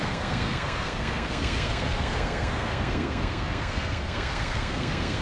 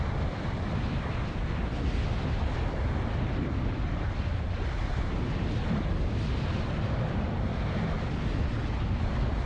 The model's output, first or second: first